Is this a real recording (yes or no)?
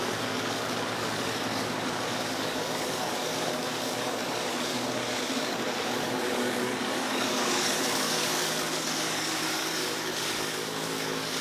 no